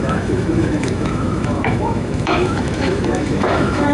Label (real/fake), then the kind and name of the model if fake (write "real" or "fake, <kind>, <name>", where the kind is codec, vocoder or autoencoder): fake, autoencoder, DAC-VAE